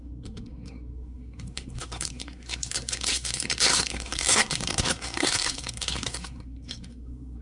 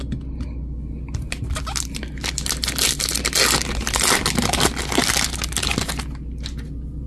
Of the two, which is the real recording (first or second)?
second